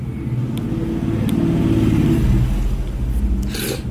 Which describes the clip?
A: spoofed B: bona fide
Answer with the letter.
B